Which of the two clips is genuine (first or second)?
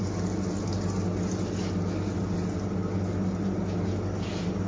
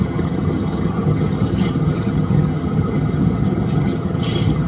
first